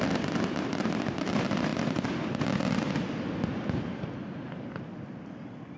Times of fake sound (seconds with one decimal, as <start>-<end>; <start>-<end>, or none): none